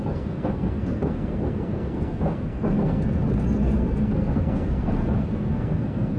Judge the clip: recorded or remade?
remade